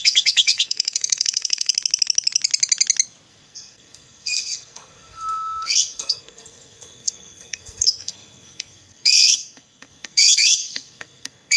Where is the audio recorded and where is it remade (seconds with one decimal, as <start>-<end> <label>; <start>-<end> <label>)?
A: 0.0-1.7 remade; 1.7-3.3 recorded; 3.3-11.6 remade